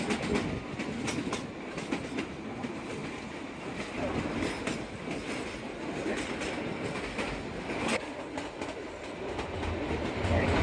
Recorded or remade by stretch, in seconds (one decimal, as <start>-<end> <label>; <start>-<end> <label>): 0.0-10.6 recorded